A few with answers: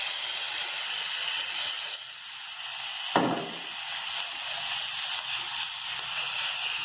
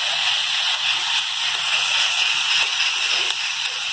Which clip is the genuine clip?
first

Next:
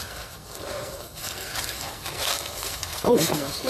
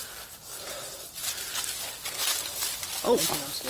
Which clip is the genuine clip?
second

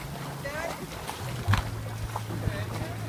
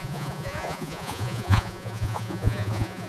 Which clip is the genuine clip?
first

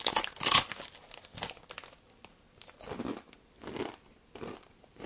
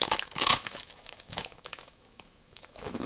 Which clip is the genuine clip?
first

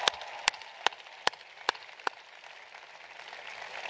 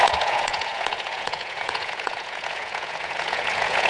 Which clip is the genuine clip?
first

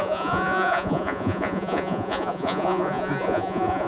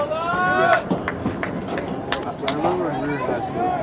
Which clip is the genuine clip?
second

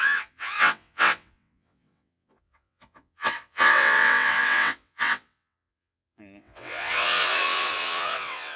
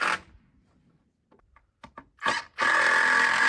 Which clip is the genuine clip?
second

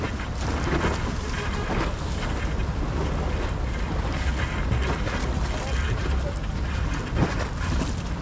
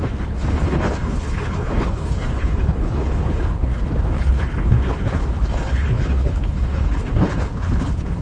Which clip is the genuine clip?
first